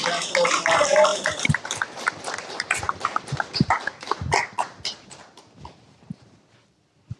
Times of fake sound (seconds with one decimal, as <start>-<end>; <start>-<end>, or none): 1.1-5.4